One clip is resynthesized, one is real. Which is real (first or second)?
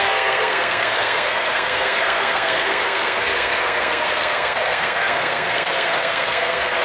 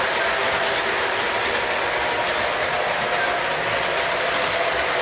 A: second